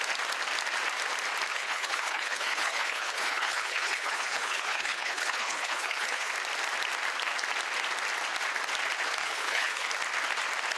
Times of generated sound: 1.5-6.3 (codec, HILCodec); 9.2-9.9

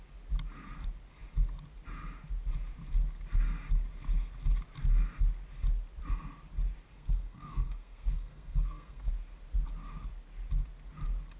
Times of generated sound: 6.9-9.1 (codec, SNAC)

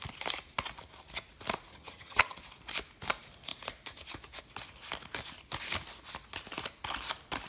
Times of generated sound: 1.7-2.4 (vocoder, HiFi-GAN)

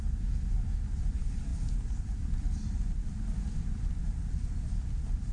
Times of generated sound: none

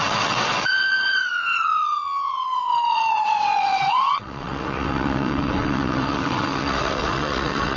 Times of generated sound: 0.0-7.8 (vocoder, WaveNeXt)

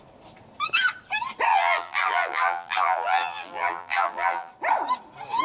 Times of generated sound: 1.5-4.5 (vocoder, BigVGAN v2)